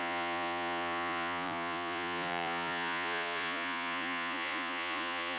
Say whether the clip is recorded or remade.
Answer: remade